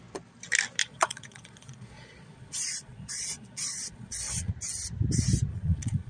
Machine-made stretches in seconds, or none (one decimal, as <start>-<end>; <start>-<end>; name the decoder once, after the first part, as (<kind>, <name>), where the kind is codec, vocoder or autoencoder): 0.8-4.5 (vocoder, Vocos); 5.5-6.1